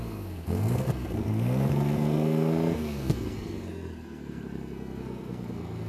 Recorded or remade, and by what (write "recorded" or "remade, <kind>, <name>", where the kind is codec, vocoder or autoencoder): remade, codec, SNAC